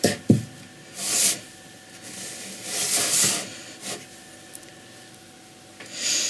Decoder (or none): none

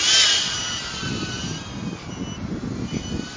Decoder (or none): none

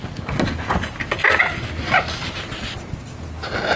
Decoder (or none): none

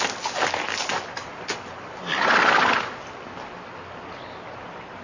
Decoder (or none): none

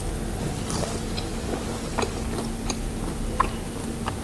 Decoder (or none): none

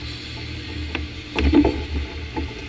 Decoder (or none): none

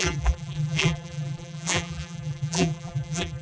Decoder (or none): vocoder, BigVGAN v2